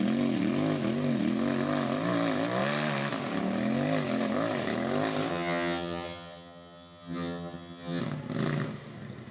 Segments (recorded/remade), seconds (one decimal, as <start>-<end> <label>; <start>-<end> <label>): 0.0-5.3 recorded; 5.3-8.0 remade; 8.0-9.3 recorded